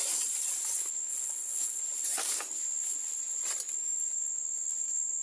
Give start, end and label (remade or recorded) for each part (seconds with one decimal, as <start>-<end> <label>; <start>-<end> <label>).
0.0-1.1 recorded; 1.1-1.8 remade; 1.8-5.2 recorded